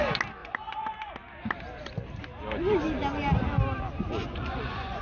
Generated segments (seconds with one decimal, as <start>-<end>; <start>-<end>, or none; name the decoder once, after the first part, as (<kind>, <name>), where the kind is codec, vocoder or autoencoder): 0.4-1.1 (vocoder, Vocos); 4.2-5.0